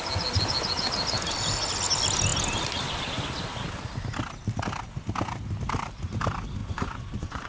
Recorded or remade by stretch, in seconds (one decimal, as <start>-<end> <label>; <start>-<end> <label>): 0.0-6.6 recorded; 6.6-7.5 remade